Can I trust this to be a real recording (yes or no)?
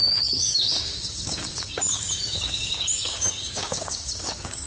no